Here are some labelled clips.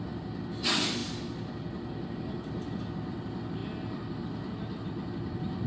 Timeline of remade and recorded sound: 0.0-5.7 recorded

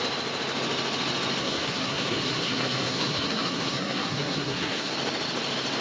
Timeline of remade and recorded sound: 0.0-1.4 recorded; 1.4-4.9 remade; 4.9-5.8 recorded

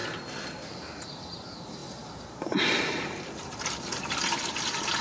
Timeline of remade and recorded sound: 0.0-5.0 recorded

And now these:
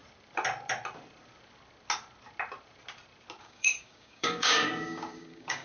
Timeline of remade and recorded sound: 0.0-3.4 recorded; 3.4-5.6 remade